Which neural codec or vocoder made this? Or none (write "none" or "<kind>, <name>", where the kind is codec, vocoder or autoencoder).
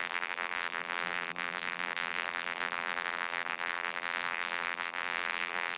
vocoder, BigVGAN v2